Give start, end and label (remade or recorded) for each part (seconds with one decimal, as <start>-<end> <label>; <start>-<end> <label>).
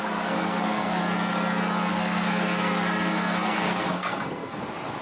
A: 0.0-1.0 remade; 1.0-1.9 recorded; 1.9-4.6 remade; 4.6-5.0 recorded